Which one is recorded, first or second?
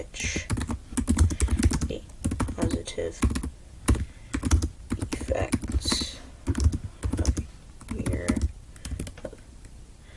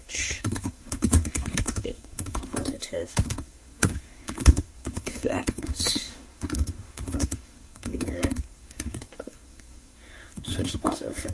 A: first